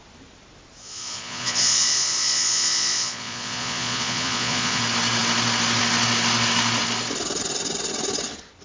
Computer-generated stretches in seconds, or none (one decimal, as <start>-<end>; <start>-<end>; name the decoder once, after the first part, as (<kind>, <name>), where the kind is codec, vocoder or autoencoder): 0.8-4.8 (vocoder, Vocos)